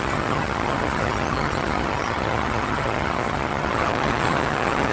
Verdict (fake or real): fake